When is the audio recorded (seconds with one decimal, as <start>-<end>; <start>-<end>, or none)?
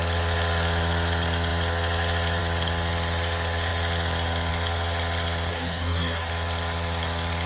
0.0-5.5; 6.3-7.5